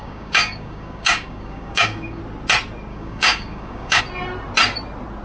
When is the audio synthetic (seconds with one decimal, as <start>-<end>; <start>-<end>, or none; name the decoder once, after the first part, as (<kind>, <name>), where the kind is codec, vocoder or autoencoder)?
0.0-2.2 (codec, DAC); 2.9-4.0